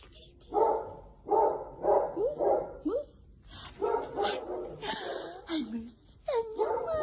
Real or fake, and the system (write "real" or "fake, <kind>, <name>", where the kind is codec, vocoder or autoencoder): real